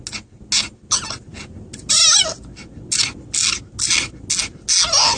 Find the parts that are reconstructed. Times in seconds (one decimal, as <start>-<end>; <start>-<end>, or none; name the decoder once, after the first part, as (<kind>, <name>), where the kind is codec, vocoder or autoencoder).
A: none